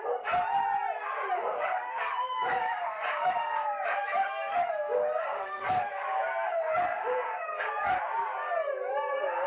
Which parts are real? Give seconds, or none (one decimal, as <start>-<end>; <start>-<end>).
0.0-1.4; 6.2-6.9; 7.6-9.5